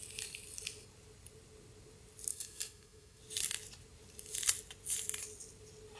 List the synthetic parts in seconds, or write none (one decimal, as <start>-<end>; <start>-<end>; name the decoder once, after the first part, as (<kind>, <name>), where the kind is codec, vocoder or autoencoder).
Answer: 2.3-3.2 (autoencoder, DAC-VAE)

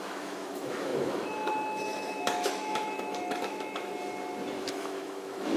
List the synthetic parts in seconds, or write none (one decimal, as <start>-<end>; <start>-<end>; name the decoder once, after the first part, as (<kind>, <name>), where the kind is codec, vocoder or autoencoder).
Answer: 0.0-3.9 (autoencoder, DAC-VAE); 4.6-5.6

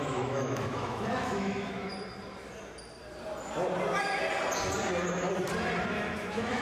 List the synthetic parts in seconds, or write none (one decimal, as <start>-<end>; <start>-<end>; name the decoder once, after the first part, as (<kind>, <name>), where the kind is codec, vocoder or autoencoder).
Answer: 0.0-1.9 (autoencoder, DAC-VAE); 5.9-6.6

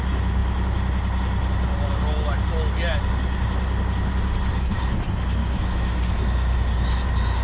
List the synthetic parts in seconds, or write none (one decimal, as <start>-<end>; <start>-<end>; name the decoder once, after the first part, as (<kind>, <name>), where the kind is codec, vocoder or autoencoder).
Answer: 5.4-6.0 (autoencoder, DAC-VAE)

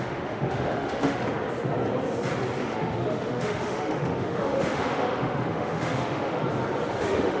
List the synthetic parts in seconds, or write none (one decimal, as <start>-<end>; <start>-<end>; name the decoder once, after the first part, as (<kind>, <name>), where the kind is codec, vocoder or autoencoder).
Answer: 0.0-1.2 (autoencoder, DAC-VAE); 2.6-6.4; 6.9-7.4

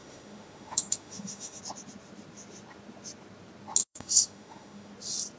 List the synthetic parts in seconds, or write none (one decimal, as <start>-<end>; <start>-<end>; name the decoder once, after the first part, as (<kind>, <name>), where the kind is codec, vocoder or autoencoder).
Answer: 0.0-1.6 (autoencoder, DAC-VAE); 3.8-4.9